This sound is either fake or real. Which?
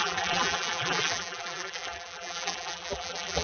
fake